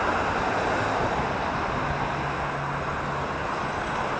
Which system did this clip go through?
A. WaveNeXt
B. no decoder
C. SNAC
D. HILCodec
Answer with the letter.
B